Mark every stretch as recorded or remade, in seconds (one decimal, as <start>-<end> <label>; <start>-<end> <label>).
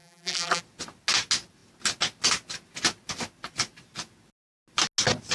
0.0-0.6 remade; 0.6-5.3 recorded